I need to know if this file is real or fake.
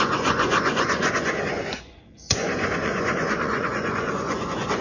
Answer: fake